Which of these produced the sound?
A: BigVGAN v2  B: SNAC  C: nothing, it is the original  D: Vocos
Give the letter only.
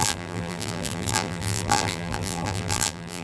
A